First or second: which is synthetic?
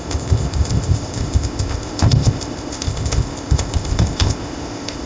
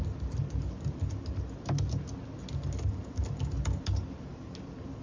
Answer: first